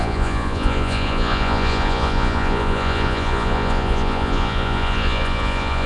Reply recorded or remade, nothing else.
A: remade